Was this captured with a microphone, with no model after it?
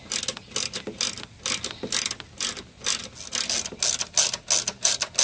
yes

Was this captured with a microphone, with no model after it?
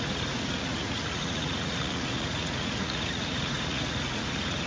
no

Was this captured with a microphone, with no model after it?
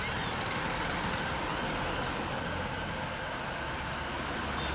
yes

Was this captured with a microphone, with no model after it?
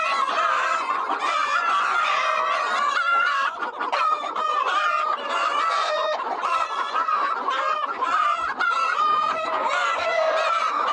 no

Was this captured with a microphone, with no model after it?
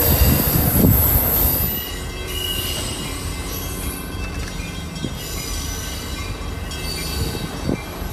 yes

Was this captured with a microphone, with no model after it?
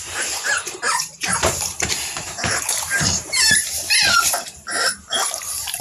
no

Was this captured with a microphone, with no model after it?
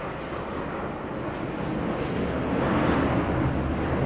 yes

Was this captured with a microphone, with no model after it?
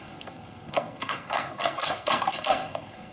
no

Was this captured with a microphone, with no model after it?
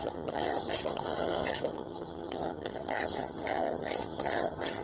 no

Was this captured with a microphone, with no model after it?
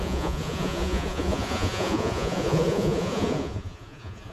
no